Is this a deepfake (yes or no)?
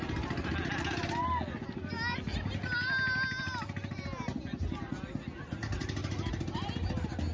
no